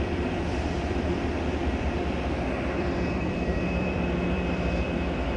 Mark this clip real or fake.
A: fake